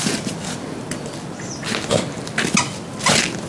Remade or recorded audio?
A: recorded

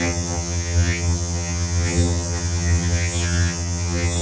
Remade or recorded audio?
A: remade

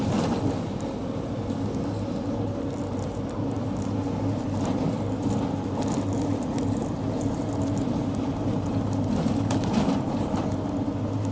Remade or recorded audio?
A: recorded